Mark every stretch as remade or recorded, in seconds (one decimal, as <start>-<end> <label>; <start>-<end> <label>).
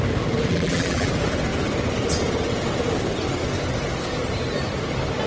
0.0-0.5 recorded; 0.5-1.1 remade; 1.1-5.3 recorded